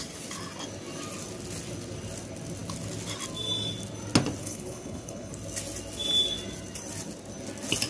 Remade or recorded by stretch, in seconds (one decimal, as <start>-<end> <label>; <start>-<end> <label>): 0.0-4.4 recorded; 4.4-5.3 remade; 5.3-7.9 recorded